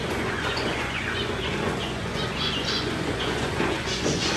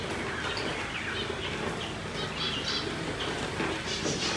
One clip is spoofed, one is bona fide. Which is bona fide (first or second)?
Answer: second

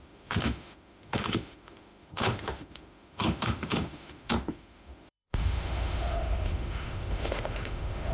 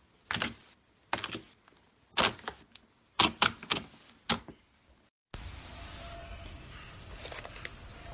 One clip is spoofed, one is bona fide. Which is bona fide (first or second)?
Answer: second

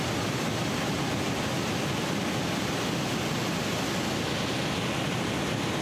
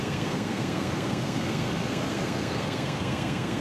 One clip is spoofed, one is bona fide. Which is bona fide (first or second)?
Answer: first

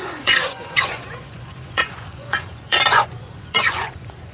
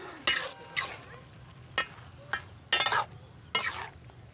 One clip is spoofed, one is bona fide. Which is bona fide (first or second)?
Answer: second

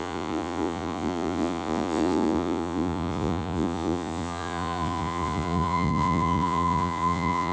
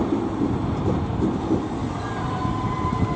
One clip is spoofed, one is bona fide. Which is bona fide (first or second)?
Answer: second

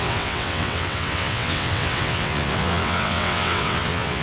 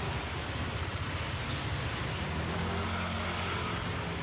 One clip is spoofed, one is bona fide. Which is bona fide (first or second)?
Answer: second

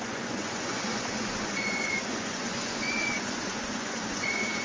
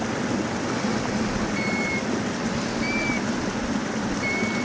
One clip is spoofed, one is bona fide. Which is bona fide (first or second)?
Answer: second